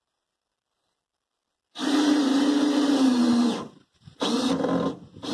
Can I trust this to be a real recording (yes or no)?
yes